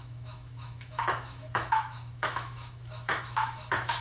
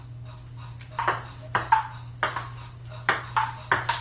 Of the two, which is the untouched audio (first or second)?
second